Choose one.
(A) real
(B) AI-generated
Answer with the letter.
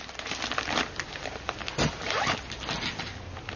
A